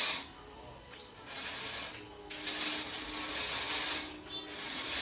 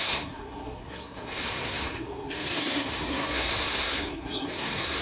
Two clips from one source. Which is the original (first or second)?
first